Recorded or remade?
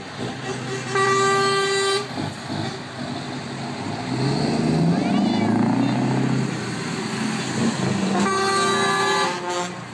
recorded